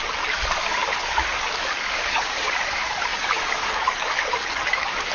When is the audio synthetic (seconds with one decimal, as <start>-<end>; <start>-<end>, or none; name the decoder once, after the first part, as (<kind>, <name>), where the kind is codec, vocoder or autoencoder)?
0.0-5.1 (codec, DAC)